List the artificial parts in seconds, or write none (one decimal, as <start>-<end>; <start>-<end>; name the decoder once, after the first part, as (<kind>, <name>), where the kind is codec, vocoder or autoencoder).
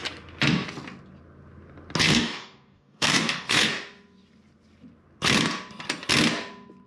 2.0-3.7 (codec, DAC)